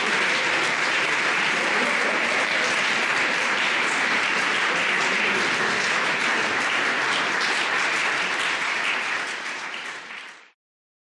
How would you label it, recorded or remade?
remade